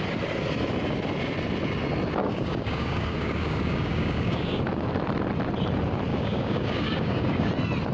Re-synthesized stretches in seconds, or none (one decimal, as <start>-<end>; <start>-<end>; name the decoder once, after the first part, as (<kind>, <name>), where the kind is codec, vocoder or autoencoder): 2.2-4.6 (codec, DAC); 6.1-7.5